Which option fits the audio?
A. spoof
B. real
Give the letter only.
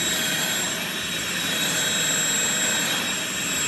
B